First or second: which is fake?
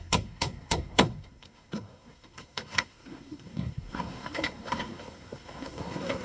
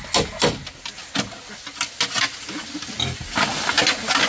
first